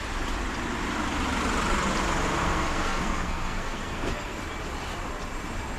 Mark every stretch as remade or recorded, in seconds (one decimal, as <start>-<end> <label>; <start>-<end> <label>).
0.0-2.4 recorded; 2.4-4.4 remade; 4.4-5.8 recorded